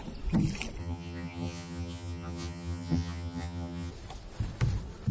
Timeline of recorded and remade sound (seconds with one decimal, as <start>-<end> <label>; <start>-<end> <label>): 0.0-0.8 recorded; 0.8-3.9 remade; 3.9-5.1 recorded